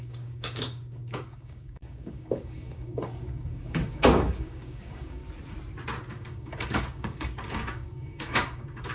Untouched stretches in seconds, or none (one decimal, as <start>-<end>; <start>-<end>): 5.2-6.1